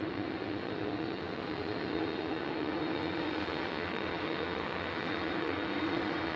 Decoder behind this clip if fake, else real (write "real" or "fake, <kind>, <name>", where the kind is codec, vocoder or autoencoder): fake, vocoder, WaveNeXt